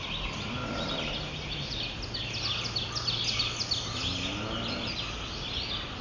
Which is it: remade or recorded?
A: recorded